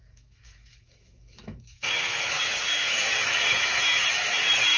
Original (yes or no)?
no